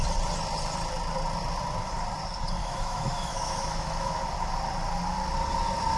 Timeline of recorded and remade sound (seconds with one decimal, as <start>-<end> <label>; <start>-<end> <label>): 0.0-2.6 recorded; 2.6-4.2 remade; 4.2-6.0 recorded